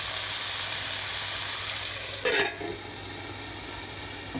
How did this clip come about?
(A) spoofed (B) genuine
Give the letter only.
B